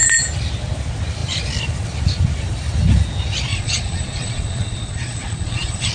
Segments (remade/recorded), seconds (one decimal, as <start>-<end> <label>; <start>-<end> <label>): 0.0-3.5 recorded; 3.5-5.9 remade